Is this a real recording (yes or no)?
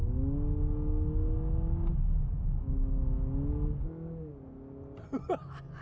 yes